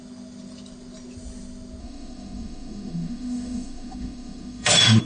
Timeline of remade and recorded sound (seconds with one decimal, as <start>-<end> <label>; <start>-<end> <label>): 0.0-1.8 recorded; 1.8-5.0 remade